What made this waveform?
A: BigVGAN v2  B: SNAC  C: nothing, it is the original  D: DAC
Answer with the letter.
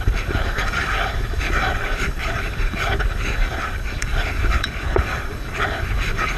D